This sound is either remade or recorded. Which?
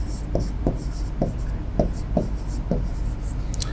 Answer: recorded